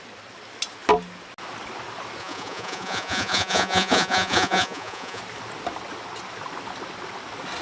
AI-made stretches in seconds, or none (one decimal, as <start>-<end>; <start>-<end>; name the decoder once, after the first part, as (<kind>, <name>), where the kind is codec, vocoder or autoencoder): 2.2-5.2 (vocoder, Vocos)